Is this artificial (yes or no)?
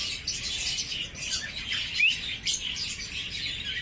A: no